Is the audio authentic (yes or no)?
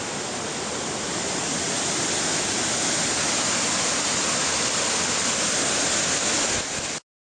yes